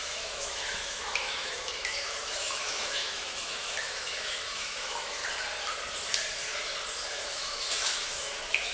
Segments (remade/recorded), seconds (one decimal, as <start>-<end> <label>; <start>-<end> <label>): 0.0-5.2 remade; 5.2-7.1 recorded; 7.1-8.7 remade